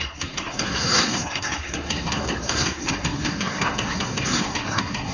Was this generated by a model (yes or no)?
yes